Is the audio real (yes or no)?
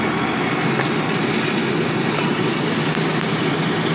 yes